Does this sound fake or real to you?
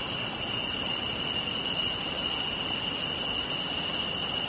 fake